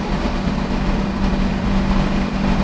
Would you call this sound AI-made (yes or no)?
yes